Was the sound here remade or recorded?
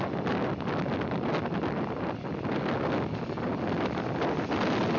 recorded